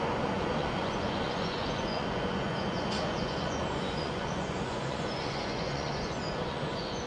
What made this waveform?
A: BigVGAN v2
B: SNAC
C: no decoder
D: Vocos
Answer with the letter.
D